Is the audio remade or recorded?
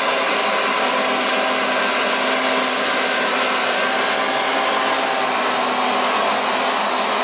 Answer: recorded